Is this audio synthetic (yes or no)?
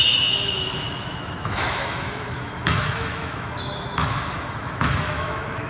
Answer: yes